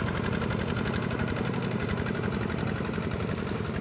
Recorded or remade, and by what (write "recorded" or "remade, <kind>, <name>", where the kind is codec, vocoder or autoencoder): recorded